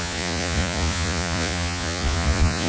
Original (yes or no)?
no